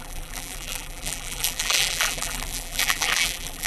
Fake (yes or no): yes